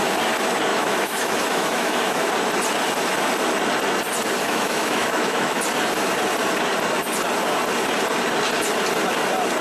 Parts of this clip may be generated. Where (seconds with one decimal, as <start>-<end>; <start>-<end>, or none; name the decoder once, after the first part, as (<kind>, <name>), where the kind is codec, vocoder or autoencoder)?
0.7-2.3 (autoencoder, DAC-VAE); 4.4-5.6